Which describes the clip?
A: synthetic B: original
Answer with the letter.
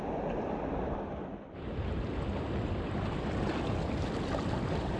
B